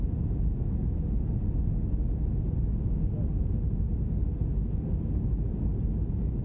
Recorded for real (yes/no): yes